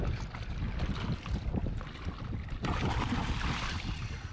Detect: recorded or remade recorded